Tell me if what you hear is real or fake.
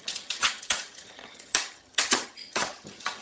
fake